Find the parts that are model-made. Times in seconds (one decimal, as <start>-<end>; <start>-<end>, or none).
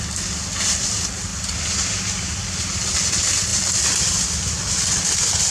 3.5-4.1